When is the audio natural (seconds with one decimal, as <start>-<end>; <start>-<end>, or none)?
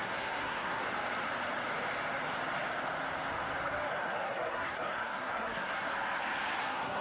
0.8-3.9; 5.9-6.6